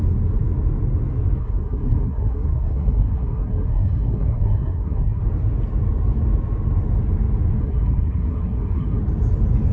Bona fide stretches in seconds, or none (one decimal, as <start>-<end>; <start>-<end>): 0.0-1.4; 5.2-7.6; 9.0-9.7